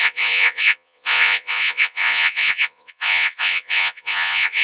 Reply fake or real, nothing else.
fake